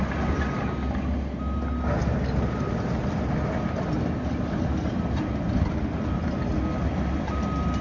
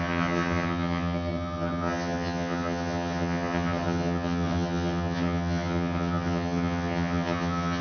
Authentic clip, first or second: first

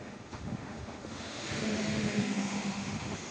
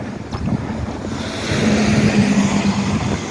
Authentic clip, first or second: second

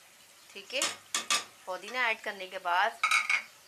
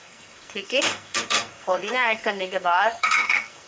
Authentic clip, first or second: first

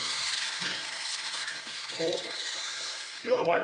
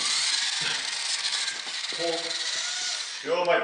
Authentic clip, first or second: second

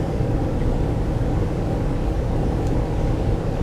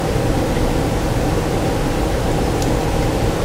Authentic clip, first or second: second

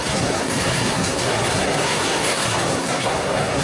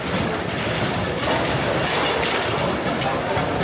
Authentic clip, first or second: second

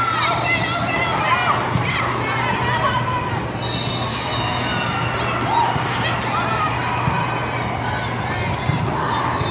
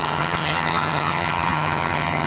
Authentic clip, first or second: first